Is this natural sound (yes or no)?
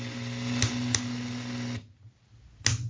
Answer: yes